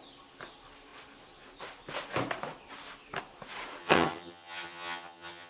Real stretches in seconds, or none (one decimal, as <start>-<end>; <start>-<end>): 0.0-3.8